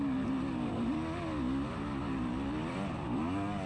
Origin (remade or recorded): recorded